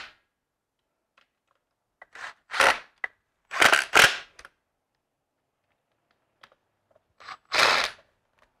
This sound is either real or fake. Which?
real